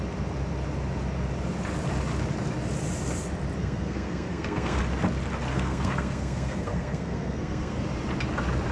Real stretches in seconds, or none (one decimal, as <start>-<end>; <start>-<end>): 0.0-3.6; 4.8-5.5; 7.8-8.7